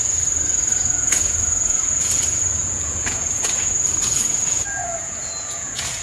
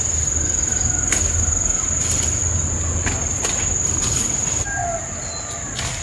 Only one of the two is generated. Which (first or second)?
first